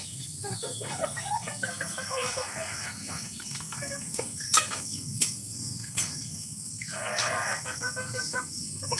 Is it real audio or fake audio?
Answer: fake